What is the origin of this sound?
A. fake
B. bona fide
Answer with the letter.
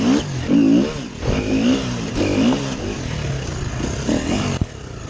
B